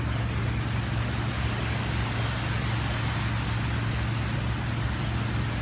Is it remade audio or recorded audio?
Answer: recorded